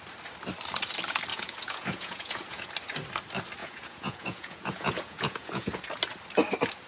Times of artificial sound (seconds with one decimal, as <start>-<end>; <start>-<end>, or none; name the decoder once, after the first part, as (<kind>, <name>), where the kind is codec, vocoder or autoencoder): 1.3-2.7 (vocoder, Vocos); 3.6-5.8